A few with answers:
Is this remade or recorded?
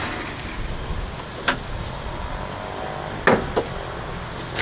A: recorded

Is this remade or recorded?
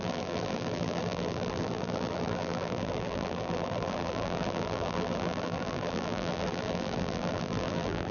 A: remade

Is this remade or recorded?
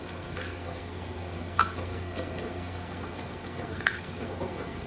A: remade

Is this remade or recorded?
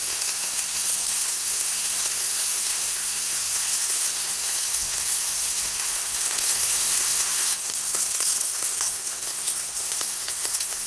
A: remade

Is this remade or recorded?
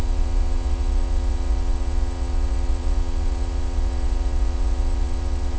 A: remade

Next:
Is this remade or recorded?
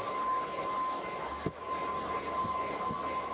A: recorded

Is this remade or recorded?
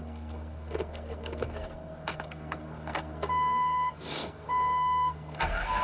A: remade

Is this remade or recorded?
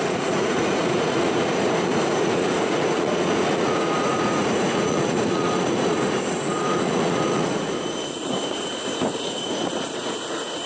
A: remade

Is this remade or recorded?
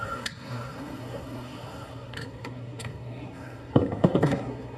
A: remade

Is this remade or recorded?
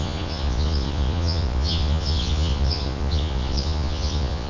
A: remade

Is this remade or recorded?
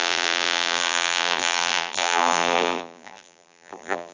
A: remade